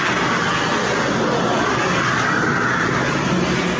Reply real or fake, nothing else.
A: real